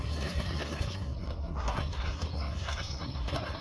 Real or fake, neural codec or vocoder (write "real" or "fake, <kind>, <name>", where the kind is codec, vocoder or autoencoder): fake, codec, SNAC